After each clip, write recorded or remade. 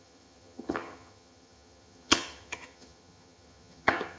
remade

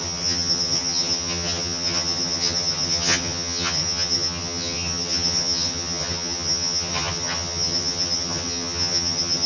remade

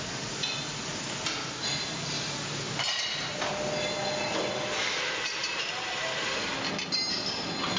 recorded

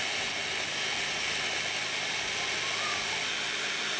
recorded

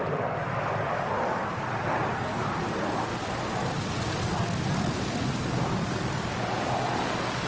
recorded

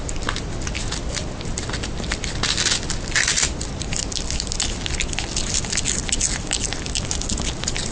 recorded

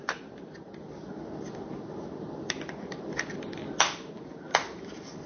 recorded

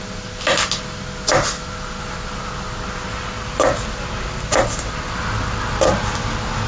recorded